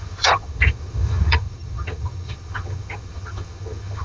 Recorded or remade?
remade